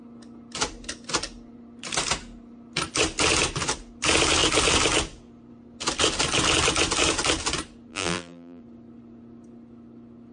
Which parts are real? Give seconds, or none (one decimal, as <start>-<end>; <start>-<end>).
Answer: 0.0-7.9; 8.6-10.3